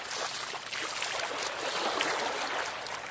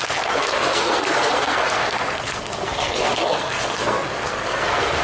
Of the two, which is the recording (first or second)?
first